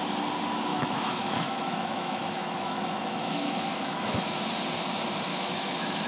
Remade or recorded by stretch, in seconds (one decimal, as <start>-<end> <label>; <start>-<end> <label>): 0.0-0.7 recorded; 0.7-4.4 remade; 4.4-5.3 recorded; 5.3-6.1 remade